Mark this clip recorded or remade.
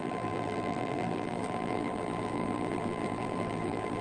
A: remade